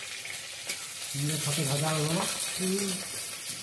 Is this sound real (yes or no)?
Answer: yes